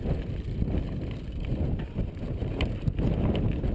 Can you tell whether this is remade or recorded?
recorded